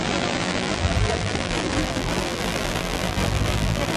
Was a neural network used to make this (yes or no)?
yes